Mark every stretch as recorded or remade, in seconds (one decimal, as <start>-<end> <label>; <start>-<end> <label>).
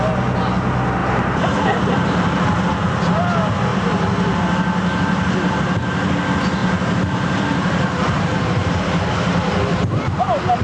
0.0-1.0 recorded; 1.0-2.4 remade; 2.4-3.7 recorded; 3.7-4.4 remade; 4.4-6.6 recorded; 6.6-9.1 remade; 9.1-10.6 recorded